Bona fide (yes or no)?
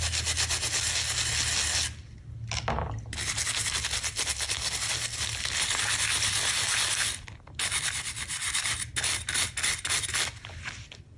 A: yes